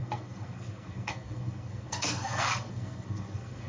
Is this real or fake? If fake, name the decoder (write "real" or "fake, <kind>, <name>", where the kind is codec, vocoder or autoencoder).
fake, codec, SNAC